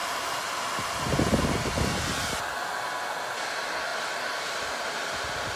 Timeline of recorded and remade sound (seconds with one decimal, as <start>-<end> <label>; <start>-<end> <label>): 0.0-5.6 recorded